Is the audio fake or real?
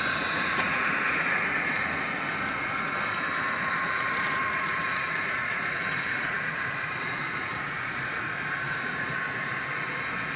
fake